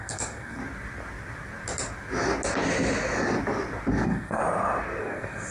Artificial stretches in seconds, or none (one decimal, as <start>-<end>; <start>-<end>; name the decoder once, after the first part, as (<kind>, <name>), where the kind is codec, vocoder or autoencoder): 0.0-0.6 (codec, SNAC); 3.9-4.4; 5.0-5.5